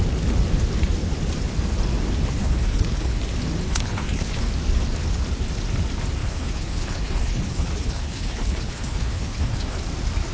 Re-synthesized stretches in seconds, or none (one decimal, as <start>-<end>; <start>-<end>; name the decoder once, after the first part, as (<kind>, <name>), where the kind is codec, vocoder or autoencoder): 2.4-3.2 (codec, HILCodec); 3.7-4.5; 6.2-9.8